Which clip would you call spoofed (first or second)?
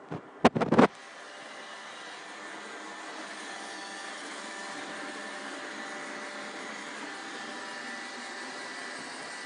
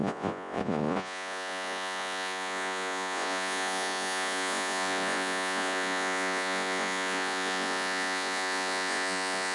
second